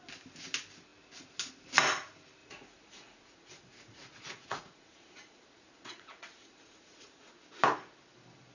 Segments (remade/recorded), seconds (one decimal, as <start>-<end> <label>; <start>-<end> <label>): 0.0-2.4 recorded; 2.4-7.3 remade; 7.3-8.5 recorded